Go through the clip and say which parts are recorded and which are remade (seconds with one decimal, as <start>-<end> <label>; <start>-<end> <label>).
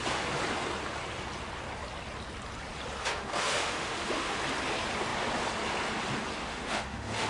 0.0-3.0 recorded; 3.0-4.4 remade; 4.4-6.4 recorded; 6.4-7.3 remade